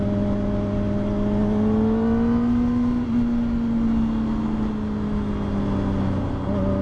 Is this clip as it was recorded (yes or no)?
yes